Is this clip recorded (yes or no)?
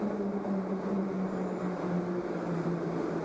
no